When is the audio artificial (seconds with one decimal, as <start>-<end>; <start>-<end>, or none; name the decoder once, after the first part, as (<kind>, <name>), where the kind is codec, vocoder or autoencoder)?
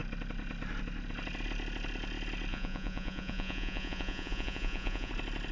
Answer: 2.5-5.1 (vocoder, Vocos)